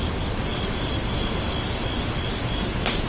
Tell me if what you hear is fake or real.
real